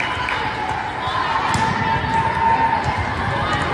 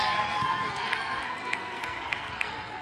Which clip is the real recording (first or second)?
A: first